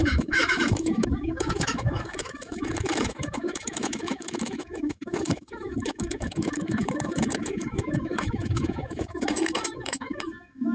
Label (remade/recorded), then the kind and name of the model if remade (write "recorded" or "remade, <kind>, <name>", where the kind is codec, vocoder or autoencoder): remade, autoencoder, DAC-VAE